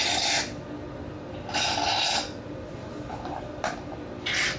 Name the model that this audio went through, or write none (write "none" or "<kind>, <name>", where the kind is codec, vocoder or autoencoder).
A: none